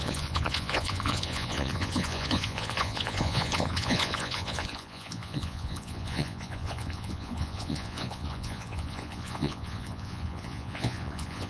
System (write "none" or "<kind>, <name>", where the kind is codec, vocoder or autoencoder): vocoder, Vocos